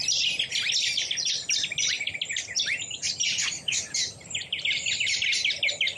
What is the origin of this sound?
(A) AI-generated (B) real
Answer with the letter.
B